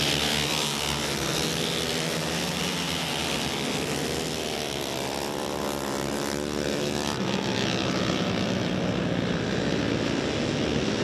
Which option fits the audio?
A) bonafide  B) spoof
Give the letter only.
A